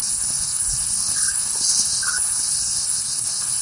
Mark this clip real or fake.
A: fake